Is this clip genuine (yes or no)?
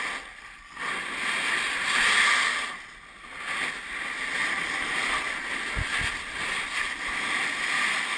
yes